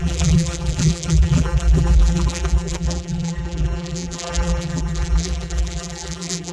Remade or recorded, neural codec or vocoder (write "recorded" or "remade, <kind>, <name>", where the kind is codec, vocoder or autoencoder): remade, vocoder, BigVGAN v2